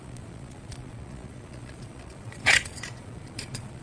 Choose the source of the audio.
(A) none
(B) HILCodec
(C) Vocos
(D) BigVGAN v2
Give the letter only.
C